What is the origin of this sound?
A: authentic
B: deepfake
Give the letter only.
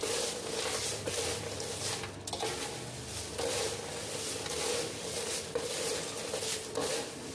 A